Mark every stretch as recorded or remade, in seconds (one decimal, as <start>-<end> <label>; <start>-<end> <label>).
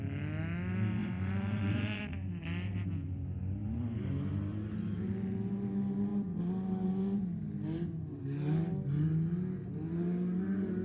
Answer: 0.0-1.0 recorded; 1.0-2.0 remade; 2.0-10.8 recorded